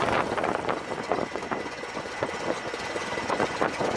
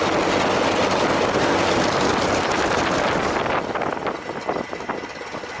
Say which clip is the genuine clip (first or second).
second